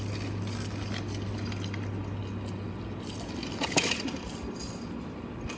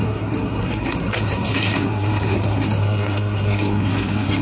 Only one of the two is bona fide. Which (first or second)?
first